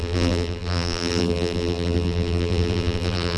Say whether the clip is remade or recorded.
remade